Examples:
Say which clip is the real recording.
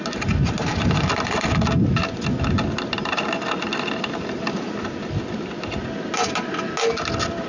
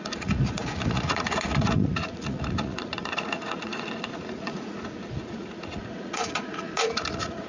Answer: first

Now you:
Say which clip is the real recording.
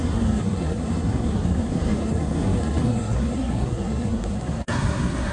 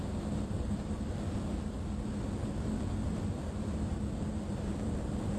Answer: second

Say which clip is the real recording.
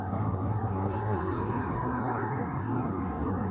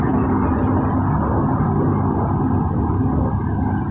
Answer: second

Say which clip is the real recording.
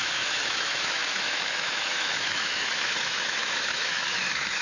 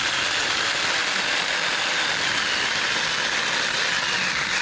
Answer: second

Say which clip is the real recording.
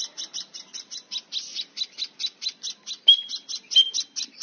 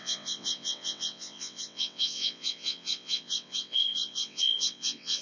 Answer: first